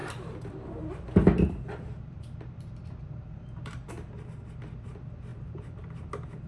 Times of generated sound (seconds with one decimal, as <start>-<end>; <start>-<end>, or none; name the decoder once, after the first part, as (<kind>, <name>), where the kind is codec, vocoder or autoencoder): 0.0-3.9 (vocoder, BigVGAN v2); 5.3-5.9